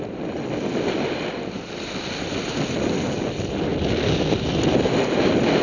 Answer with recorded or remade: recorded